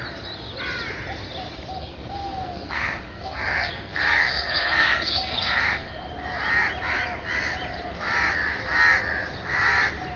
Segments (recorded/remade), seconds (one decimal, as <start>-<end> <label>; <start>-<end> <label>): 0.0-1.8 recorded; 1.8-6.1 remade; 6.1-10.2 recorded